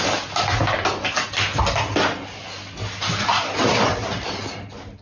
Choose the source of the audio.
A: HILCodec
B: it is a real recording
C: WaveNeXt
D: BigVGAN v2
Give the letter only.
B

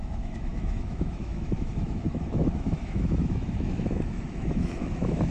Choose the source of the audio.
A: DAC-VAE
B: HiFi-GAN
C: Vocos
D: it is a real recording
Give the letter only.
A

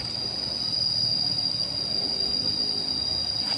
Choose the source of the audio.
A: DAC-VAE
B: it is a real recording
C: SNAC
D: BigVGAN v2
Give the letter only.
B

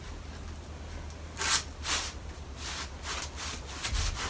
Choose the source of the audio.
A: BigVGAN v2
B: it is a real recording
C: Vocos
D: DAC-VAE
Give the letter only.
B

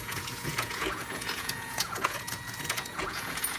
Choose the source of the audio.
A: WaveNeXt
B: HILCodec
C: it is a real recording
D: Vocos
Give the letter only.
D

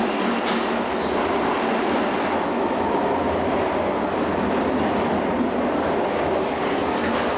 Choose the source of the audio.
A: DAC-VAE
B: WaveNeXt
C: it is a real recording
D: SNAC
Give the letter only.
C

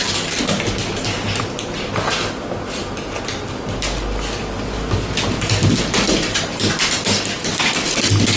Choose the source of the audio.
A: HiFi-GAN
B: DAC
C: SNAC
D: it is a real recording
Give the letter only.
D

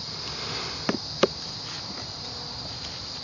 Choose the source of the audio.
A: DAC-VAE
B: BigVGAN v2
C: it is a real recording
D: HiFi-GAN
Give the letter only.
C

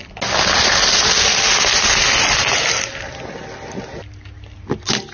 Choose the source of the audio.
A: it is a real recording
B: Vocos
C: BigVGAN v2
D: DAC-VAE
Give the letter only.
A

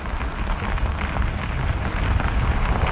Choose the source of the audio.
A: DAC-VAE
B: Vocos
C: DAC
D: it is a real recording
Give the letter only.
D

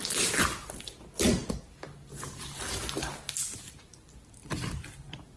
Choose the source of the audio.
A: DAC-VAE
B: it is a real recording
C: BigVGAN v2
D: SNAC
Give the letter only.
B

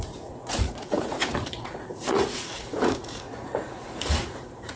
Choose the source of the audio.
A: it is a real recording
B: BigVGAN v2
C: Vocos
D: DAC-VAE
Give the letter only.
C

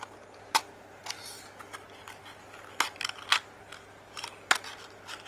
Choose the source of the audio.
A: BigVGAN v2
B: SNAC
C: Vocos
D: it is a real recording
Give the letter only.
D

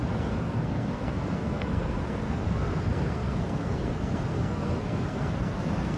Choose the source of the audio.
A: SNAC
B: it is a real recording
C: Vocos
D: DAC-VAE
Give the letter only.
A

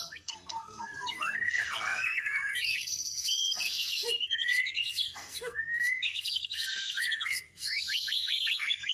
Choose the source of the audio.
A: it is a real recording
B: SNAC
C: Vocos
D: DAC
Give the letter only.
B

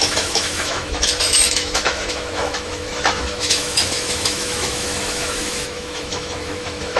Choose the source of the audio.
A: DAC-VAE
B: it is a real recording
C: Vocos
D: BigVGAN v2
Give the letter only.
A